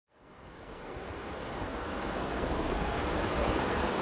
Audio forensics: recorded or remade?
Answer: remade